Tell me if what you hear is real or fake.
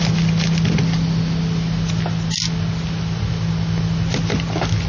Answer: real